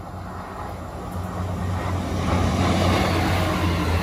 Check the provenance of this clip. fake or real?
real